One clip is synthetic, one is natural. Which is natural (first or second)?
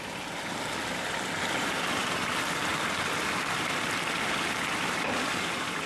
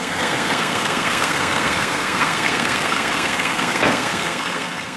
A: first